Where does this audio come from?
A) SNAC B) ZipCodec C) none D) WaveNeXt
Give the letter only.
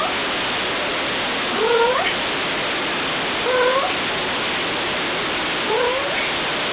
C